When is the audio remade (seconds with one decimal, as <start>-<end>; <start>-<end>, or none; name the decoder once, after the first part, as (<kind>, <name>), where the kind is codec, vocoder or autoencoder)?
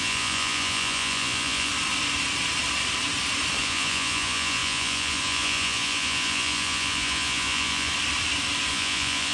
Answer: 0.0-1.7 (vocoder, Vocos); 3.6-7.9; 8.7-9.3